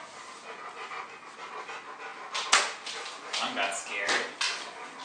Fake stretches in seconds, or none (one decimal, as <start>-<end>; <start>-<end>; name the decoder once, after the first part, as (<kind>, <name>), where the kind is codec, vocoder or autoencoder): none